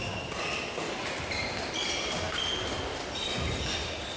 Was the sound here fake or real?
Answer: real